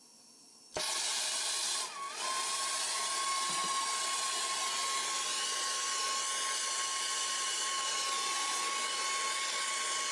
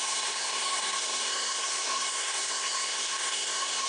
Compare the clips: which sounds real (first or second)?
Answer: first